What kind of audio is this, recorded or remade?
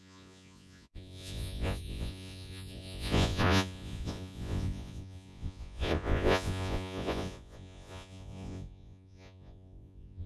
remade